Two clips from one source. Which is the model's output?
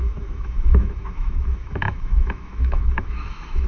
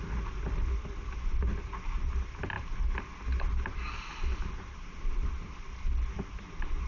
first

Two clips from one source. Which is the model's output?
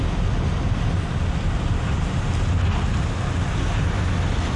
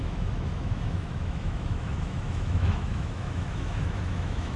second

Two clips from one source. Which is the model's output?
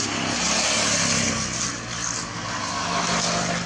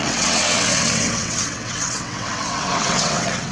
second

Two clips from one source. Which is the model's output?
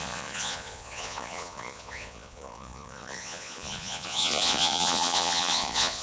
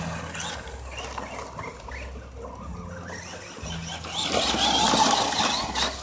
first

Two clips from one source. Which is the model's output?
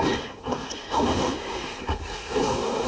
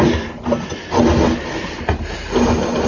first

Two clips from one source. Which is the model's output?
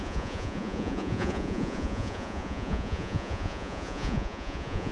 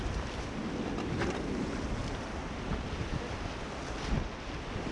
first